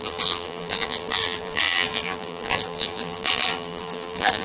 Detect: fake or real fake